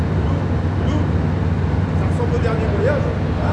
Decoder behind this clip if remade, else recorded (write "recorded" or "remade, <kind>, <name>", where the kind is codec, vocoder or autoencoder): recorded